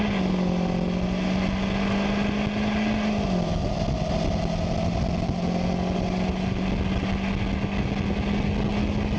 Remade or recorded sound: recorded